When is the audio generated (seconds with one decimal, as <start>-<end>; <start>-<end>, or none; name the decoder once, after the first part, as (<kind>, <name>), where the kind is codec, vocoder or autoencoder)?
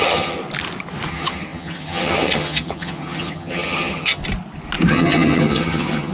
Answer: 0.0-0.4 (vocoder, HiFi-GAN); 1.1-4.2; 4.9-6.1